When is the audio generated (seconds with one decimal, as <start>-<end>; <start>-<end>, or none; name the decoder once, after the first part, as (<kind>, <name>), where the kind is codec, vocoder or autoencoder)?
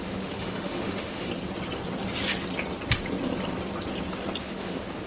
0.0-1.3 (autoencoder, DAC-VAE); 4.4-5.1